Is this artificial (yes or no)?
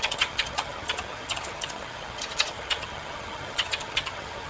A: yes